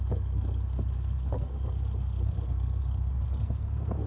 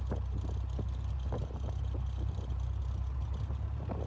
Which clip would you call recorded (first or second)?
second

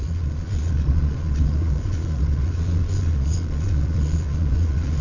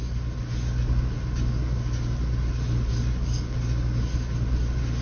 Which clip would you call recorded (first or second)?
second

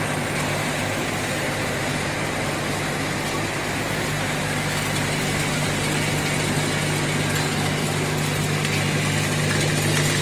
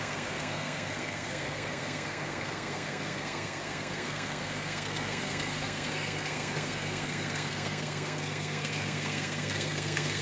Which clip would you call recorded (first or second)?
first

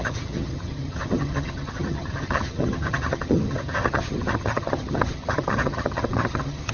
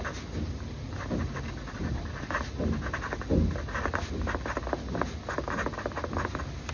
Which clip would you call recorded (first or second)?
second